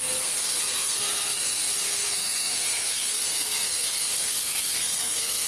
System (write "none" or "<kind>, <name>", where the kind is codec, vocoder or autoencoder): codec, SNAC